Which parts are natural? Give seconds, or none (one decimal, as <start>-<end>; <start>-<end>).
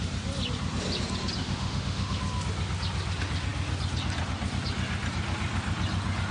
0.0-1.4; 2.2-6.3